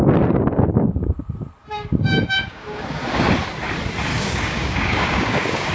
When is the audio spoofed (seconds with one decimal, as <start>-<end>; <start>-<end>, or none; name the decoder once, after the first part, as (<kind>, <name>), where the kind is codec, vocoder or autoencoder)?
1.6-3.2 (codec, DAC); 4.1-5.7